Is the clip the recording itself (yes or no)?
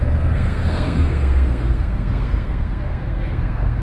no